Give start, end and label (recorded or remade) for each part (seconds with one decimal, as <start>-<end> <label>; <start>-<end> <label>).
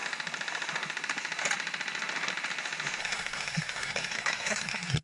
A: 0.0-3.0 recorded; 3.0-5.0 remade